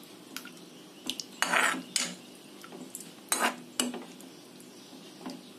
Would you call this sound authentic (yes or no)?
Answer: yes